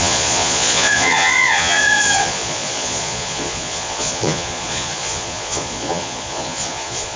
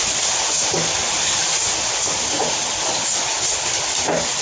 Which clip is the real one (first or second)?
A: second